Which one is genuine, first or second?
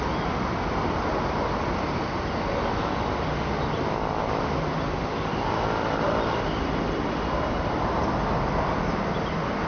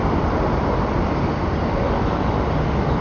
first